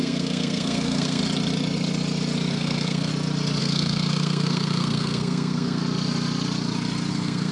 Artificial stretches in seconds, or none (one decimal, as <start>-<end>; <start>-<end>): 0.0-1.2; 2.5-3.1; 3.6-5.8; 7.1-7.5